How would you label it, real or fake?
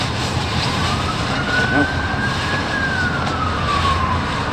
fake